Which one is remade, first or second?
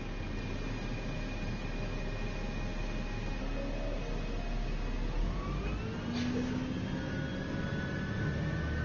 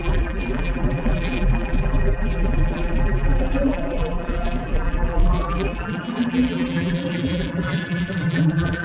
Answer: second